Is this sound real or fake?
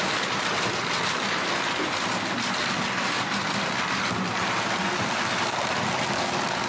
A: real